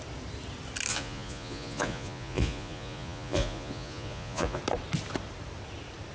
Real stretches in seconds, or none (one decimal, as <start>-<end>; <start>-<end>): 0.0-0.9; 4.6-6.1